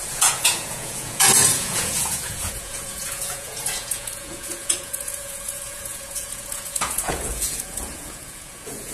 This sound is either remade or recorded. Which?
remade